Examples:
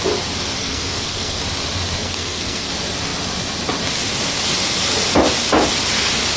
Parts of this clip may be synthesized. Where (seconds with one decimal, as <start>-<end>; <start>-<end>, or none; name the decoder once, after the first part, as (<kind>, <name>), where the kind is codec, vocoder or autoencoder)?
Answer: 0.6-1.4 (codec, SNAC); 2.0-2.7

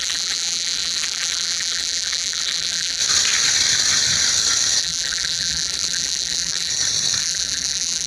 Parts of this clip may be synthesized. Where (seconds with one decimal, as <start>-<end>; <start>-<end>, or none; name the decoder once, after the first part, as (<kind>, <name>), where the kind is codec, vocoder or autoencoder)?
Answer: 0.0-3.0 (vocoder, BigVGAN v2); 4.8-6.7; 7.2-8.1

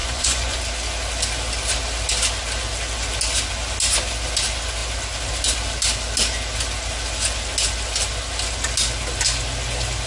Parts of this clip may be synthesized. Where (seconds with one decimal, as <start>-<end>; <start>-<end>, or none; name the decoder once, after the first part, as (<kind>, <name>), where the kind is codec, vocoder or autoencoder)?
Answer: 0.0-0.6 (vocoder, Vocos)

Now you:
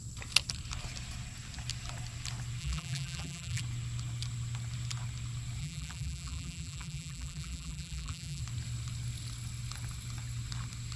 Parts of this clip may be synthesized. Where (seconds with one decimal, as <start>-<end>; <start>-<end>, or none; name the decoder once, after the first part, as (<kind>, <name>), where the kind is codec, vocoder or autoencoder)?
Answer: 2.6-3.6 (vocoder, BigVGAN v2); 5.6-8.4

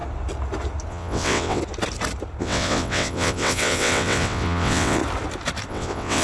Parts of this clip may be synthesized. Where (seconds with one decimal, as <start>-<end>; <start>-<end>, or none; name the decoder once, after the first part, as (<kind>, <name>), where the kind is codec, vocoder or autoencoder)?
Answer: 0.9-1.6 (vocoder, WaveNeXt); 2.4-5.0; 5.7-6.2

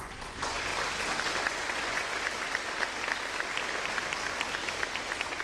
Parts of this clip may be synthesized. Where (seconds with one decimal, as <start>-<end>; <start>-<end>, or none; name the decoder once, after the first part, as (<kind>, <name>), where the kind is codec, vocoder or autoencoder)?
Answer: 0.0-0.7 (vocoder, Vocos); 1.5-2.1